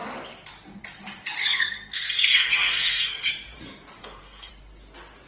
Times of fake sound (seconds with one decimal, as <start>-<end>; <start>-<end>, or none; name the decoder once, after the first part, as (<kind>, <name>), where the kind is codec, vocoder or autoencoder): 1.4-3.3 (codec, SNAC); 4.0-4.5